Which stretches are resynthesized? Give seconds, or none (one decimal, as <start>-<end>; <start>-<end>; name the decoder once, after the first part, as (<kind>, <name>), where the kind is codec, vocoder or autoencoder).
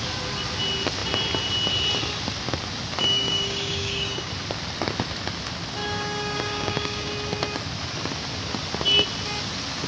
3.0-4.3 (codec, DAC); 5.8-7.1